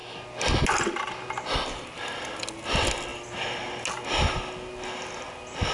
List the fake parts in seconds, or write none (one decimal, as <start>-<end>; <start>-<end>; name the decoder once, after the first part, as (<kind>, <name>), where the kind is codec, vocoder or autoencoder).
none